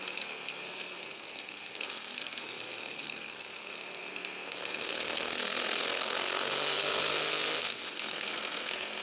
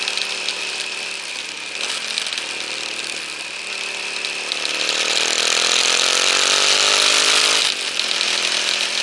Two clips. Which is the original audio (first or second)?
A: second